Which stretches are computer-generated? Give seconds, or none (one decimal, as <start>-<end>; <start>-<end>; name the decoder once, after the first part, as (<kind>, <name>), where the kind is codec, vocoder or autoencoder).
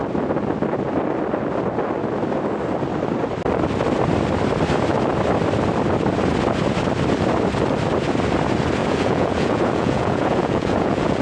8.8-11.2 (vocoder, Vocos)